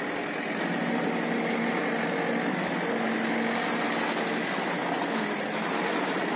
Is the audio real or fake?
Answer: real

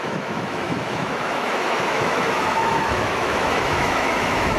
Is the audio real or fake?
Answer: fake